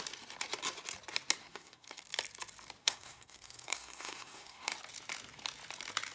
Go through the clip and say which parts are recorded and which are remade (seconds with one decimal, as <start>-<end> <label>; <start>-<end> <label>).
0.0-1.4 recorded; 1.4-2.0 remade; 2.0-2.8 recorded; 2.8-4.7 remade; 4.7-6.1 recorded